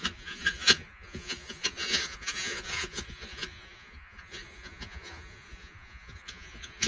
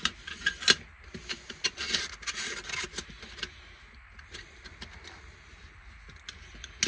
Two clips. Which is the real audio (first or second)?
second